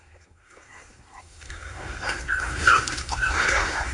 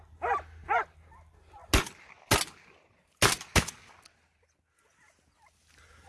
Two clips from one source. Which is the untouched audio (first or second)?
second